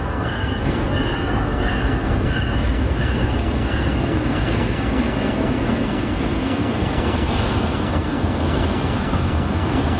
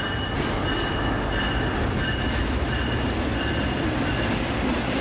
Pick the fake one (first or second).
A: first